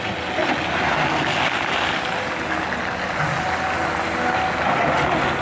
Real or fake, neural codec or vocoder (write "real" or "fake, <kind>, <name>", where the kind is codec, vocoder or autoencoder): real